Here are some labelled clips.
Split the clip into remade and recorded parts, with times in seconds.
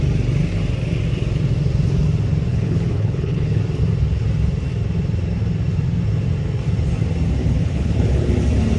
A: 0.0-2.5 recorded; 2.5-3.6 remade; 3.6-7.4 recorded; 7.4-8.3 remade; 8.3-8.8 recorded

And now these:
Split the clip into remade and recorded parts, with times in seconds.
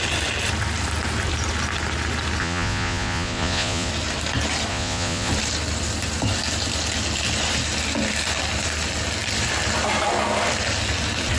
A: 0.0-2.4 recorded; 2.4-3.9 remade; 3.9-4.7 recorded; 4.7-5.3 remade; 5.3-11.4 recorded